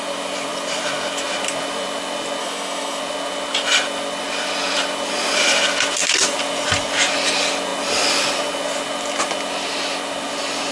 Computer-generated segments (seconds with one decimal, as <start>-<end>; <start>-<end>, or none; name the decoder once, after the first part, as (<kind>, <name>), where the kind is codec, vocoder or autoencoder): 2.4-3.0 (autoencoder, DAC-VAE)